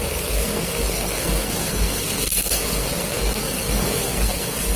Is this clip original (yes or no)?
no